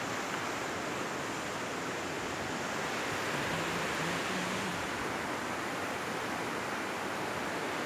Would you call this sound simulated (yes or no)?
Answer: no